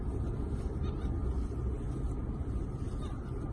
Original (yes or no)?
yes